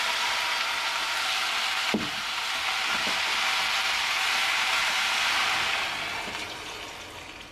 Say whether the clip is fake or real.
real